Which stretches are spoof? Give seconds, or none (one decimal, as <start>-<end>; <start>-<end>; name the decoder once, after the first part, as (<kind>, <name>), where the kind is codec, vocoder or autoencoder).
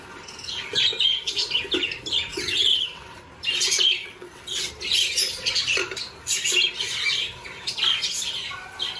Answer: 2.3-3.2 (vocoder, WaveNeXt); 4.0-4.7